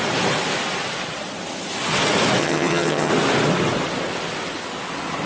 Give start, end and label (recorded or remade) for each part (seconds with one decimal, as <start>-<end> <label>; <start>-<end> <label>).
0.0-2.4 recorded; 2.4-3.1 remade; 3.1-5.3 recorded